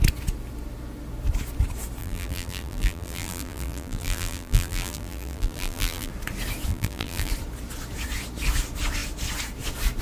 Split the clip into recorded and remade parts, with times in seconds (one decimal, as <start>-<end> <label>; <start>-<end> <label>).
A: 0.0-2.0 recorded; 2.0-6.1 remade; 6.1-6.7 recorded; 6.7-7.3 remade; 7.3-10.0 recorded